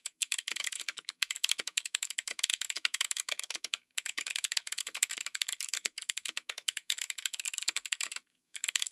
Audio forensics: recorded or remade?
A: remade